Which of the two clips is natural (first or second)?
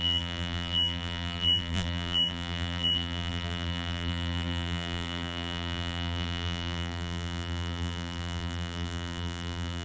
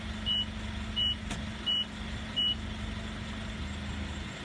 second